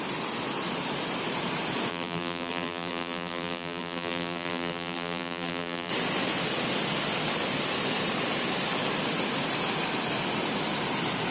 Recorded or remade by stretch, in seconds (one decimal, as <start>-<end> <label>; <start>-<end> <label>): 0.0-1.9 recorded; 1.9-5.9 remade; 5.9-11.3 recorded